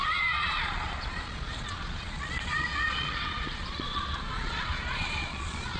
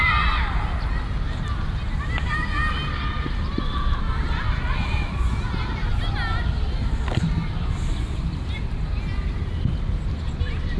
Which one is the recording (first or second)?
second